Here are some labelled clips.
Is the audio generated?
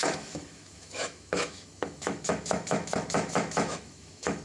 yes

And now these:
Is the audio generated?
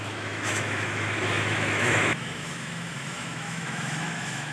yes